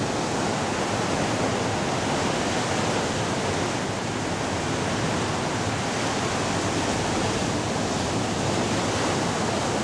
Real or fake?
real